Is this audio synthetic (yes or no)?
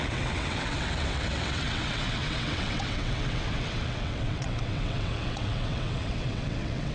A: yes